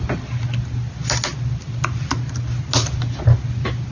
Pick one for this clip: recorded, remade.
recorded